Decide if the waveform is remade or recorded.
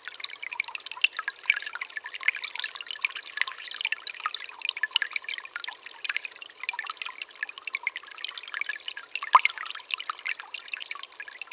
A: recorded